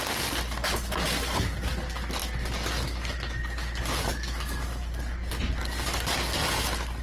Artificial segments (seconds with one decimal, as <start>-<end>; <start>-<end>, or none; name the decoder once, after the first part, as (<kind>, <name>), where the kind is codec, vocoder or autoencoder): none